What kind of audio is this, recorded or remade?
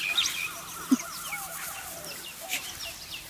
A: recorded